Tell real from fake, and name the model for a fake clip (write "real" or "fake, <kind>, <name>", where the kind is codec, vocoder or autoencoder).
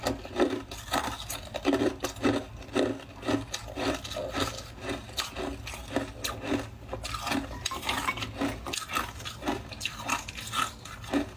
real